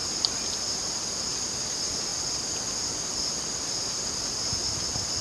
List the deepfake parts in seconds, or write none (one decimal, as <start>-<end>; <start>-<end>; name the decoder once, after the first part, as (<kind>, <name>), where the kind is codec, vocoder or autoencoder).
none